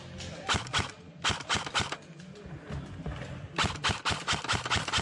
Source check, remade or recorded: recorded